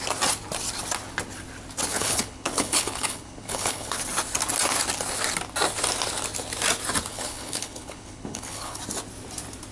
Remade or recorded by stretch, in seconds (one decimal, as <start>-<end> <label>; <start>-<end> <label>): 0.0-1.9 recorded; 1.9-4.0 remade; 4.0-7.1 recorded; 7.1-8.8 remade; 8.8-9.7 recorded